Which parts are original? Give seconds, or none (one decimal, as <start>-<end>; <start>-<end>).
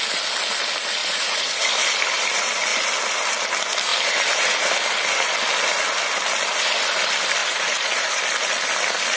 0.0-1.0; 1.6-7.4; 8.2-9.2